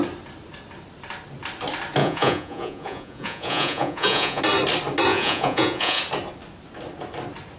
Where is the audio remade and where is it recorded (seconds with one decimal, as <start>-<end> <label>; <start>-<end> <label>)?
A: 0.0-2.0 recorded; 2.0-4.4 remade; 4.4-5.1 recorded; 5.1-6.0 remade; 6.0-7.6 recorded